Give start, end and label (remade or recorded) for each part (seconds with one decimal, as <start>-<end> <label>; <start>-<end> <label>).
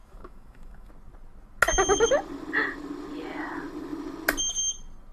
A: 0.0-0.9 remade; 0.9-5.1 recorded